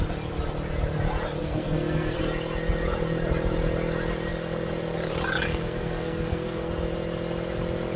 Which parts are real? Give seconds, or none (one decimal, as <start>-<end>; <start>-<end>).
0.0-1.4; 2.2-5.5; 6.7-8.0